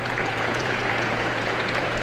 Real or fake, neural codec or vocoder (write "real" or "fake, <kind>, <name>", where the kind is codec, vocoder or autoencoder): fake, vocoder, Vocos